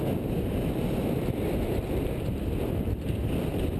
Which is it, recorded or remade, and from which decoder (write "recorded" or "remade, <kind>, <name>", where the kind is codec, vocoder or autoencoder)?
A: recorded